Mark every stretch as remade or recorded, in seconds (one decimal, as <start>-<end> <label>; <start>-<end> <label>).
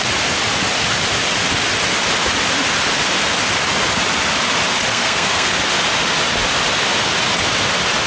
0.0-4.9 recorded; 4.9-5.5 remade; 5.5-8.1 recorded